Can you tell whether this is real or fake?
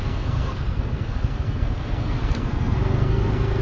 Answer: fake